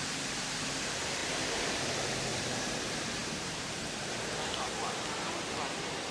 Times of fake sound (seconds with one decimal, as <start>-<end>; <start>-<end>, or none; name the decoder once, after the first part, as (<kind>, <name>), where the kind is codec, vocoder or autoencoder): 1.2-1.7 (vocoder, BigVGAN v2); 2.3-2.8; 3.2-4.1